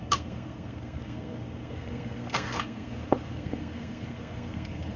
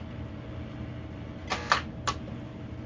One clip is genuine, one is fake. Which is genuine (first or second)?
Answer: second